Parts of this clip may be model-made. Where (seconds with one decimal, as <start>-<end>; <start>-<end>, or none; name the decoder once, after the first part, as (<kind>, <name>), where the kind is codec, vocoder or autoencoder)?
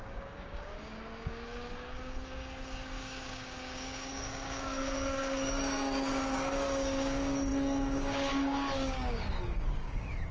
0.0-10.3 (codec, DAC)